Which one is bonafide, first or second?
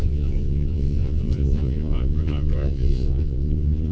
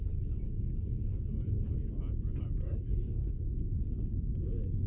second